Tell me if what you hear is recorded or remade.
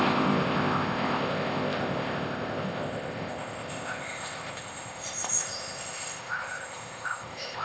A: remade